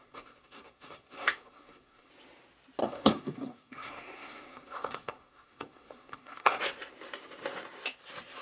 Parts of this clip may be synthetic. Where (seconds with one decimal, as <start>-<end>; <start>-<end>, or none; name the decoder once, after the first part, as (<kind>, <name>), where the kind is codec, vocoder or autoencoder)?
0.0-2.1 (codec, SNAC); 2.8-6.6